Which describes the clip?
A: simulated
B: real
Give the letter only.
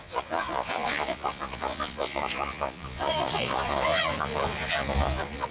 A